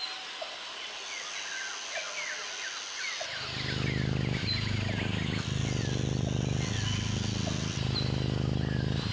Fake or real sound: real